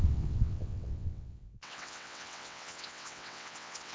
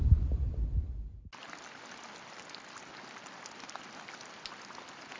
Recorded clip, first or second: second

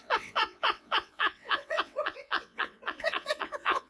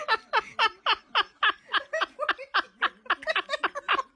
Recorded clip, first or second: second